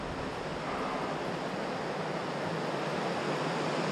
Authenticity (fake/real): real